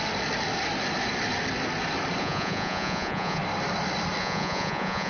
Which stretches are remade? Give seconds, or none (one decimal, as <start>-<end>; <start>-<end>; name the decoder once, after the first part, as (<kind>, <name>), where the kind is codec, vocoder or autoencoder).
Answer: 2.2-3.4 (vocoder, Vocos); 4.2-5.1